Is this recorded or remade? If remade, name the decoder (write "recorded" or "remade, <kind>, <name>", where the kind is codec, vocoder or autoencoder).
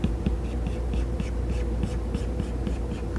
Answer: remade, vocoder, BigVGAN v2